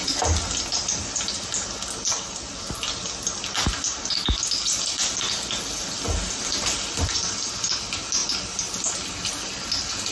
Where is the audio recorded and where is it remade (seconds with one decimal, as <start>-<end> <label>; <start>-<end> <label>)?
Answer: 0.0-10.1 recorded